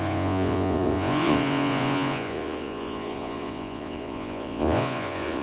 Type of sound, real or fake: fake